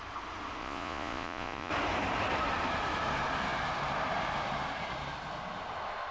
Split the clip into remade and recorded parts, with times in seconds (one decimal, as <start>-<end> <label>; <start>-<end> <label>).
0.0-0.6 recorded; 0.6-1.7 remade; 1.7-6.1 recorded